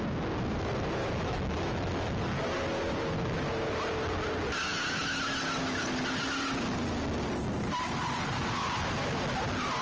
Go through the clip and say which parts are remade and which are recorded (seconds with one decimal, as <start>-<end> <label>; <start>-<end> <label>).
0.0-1.0 recorded; 1.0-2.2 remade; 2.2-9.8 recorded